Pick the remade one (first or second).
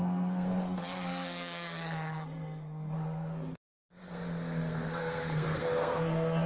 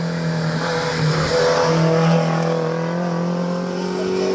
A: first